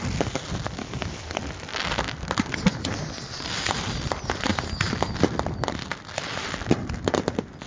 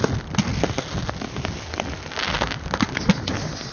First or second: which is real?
second